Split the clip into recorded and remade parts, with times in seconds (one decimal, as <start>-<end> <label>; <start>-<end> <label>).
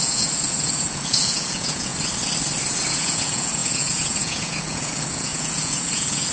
0.0-1.9 remade; 1.9-2.9 recorded; 2.9-6.3 remade